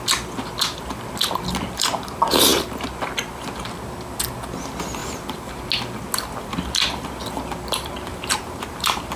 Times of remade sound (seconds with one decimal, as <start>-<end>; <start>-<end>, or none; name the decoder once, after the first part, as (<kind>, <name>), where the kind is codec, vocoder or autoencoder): 5.0-5.6 (vocoder, BigVGAN v2); 8.1-9.2